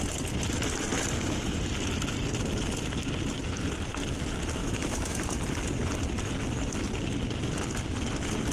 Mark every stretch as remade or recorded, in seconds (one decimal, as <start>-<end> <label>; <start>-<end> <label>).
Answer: 0.0-4.6 recorded; 4.6-5.2 remade; 5.2-8.5 recorded

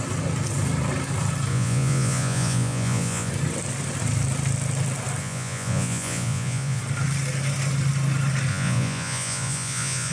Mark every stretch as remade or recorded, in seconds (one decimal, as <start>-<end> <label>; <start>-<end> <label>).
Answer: 0.0-1.5 recorded; 1.5-3.3 remade; 3.3-5.2 recorded; 5.2-6.8 remade; 6.8-8.5 recorded; 8.5-10.1 remade

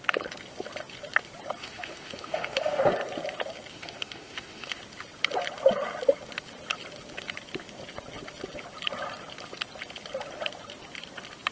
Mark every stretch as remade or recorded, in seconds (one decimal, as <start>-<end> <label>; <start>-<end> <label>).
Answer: 0.0-1.6 recorded; 1.6-2.8 remade; 2.8-3.7 recorded; 3.7-4.8 remade; 4.8-11.5 recorded

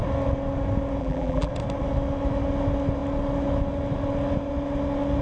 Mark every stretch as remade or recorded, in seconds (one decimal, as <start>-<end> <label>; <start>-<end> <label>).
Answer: 0.0-1.0 recorded; 1.0-1.5 remade; 1.5-5.2 recorded

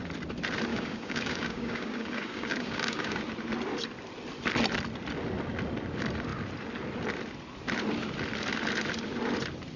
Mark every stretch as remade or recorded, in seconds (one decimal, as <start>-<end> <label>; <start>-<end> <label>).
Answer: 0.0-0.7 recorded; 0.7-3.2 remade; 3.2-9.8 recorded

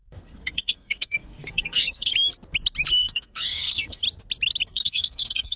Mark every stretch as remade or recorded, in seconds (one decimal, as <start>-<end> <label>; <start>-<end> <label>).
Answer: 0.0-2.1 remade; 2.1-2.9 recorded; 2.9-4.0 remade; 4.0-4.7 recorded; 4.7-5.6 remade

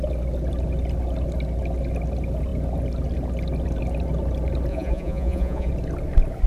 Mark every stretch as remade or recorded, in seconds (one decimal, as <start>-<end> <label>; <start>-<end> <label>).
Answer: 0.0-4.7 recorded; 4.7-5.7 remade; 5.7-6.5 recorded